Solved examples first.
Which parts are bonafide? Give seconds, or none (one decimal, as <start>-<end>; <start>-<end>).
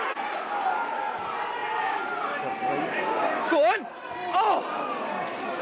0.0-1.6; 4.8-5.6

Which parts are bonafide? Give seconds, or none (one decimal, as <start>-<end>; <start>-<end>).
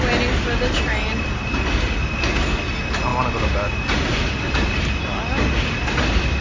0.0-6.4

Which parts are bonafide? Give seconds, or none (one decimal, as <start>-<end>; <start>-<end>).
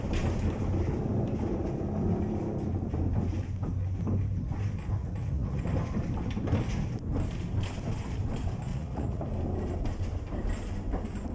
0.0-5.0; 5.6-8.7; 9.2-11.3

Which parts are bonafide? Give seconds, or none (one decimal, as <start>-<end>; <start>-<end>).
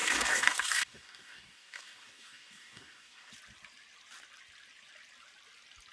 3.3-5.9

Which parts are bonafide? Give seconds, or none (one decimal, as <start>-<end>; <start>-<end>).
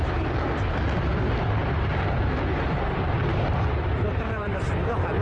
0.0-1.6; 4.7-5.2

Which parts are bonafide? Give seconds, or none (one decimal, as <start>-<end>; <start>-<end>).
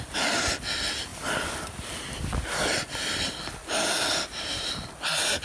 0.0-5.4